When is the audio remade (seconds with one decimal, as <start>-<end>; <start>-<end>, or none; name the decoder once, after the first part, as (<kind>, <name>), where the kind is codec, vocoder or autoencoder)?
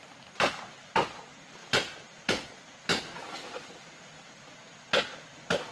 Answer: none